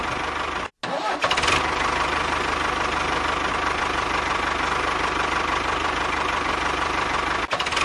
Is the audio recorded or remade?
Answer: recorded